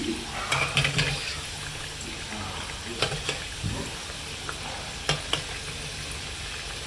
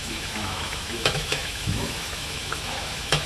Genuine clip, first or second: first